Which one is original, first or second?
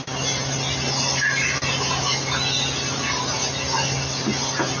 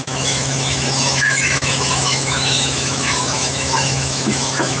first